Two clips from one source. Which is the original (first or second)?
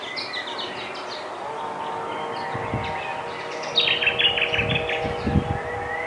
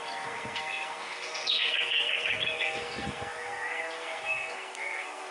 first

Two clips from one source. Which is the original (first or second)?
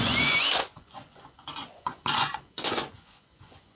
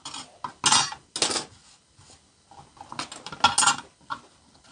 second